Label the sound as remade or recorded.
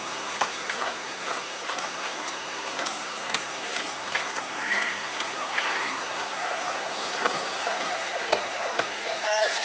remade